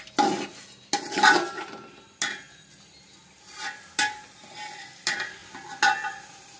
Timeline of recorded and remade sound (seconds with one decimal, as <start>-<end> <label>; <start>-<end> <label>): 0.0-6.6 recorded